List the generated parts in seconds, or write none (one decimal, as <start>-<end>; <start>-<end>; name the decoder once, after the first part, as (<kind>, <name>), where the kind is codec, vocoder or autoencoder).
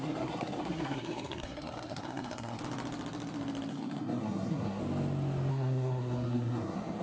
0.0-2.6 (codec, SNAC); 3.7-4.8; 5.5-7.0